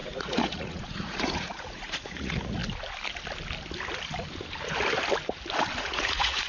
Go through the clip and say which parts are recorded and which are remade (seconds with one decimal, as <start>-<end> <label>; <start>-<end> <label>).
0.0-2.6 remade; 2.6-5.8 recorded; 5.8-6.5 remade